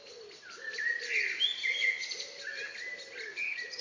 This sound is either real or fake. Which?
real